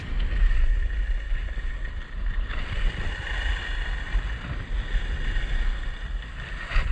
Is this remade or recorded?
recorded